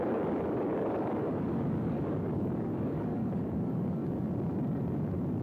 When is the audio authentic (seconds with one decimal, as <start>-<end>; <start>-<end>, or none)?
4.0-5.4